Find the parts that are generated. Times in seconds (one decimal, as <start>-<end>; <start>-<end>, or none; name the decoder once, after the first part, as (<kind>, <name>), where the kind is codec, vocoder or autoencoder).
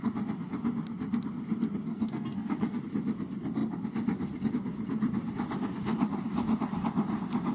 1.9-2.8 (codec, SNAC)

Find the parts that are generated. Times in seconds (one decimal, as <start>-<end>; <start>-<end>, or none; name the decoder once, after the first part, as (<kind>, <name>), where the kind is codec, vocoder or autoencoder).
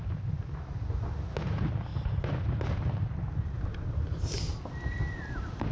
none